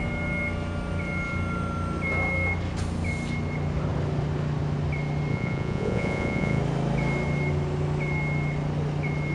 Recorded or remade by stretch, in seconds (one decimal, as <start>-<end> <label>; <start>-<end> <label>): 0.0-5.3 recorded; 5.3-6.6 remade; 6.6-9.3 recorded